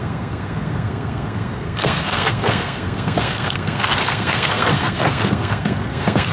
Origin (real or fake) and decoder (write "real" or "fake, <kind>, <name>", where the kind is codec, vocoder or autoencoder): fake, codec, SNAC